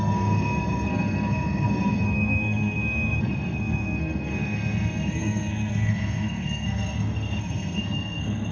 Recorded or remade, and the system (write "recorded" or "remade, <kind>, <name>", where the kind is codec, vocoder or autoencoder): remade, codec, SNAC